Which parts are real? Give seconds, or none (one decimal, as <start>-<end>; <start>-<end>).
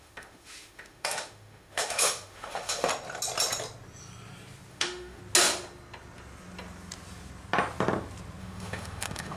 2.9-4.7; 5.2-8.4